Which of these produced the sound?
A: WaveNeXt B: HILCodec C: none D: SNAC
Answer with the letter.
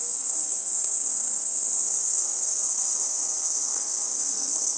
D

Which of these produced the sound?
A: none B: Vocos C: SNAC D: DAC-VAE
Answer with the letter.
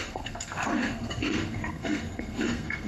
C